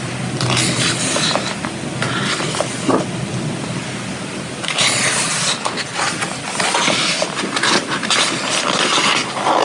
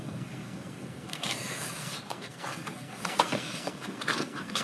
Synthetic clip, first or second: second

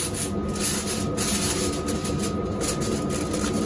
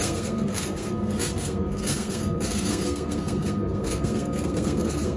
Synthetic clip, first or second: second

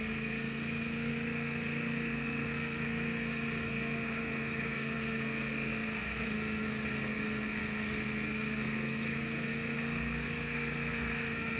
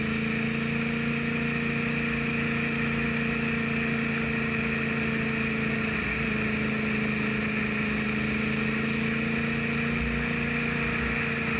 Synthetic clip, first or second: first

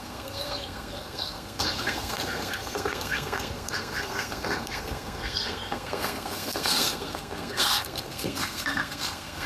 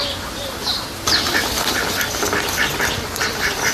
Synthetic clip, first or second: first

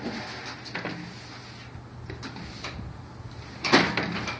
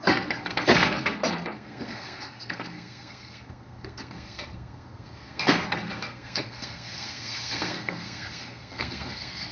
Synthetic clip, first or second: second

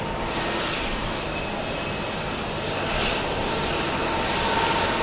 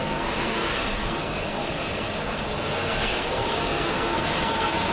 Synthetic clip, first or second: second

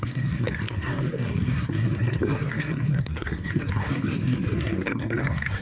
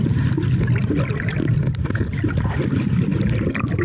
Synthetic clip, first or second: first